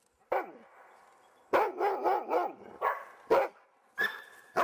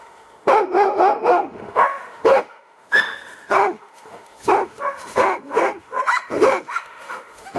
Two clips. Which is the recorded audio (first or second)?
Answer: first